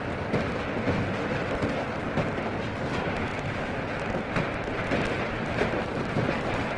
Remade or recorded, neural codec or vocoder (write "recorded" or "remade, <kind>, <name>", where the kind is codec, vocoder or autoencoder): recorded